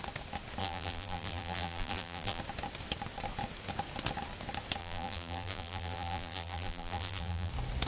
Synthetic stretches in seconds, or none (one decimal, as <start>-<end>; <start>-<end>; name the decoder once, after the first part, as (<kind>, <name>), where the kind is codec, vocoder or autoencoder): 0.6-2.4 (vocoder, BigVGAN v2); 4.8-7.5